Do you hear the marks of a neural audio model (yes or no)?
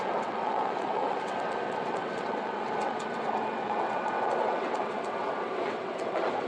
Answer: yes